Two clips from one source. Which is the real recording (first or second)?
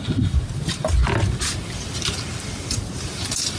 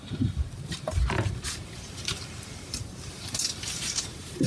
first